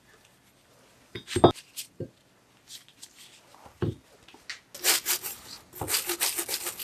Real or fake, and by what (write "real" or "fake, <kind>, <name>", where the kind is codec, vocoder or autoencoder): real